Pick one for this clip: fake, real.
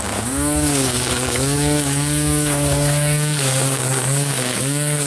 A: fake